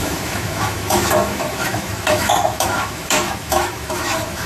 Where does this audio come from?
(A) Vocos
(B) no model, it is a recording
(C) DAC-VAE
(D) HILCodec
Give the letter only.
C